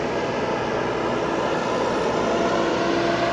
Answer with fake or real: real